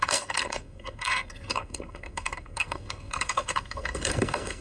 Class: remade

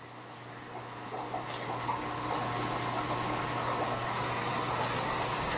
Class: recorded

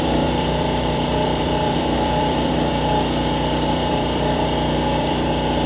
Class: remade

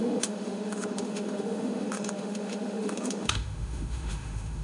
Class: remade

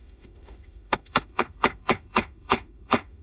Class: remade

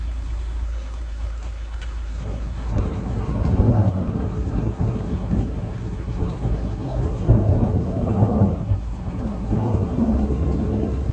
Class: remade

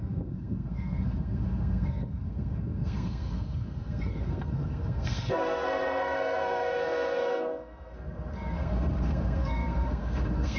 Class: remade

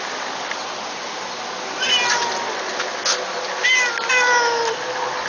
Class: recorded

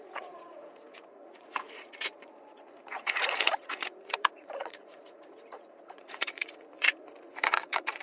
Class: remade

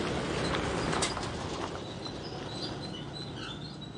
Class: recorded